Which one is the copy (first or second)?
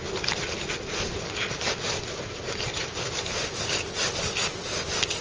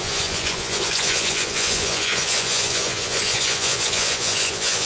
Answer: second